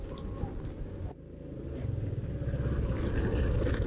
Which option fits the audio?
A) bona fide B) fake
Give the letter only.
A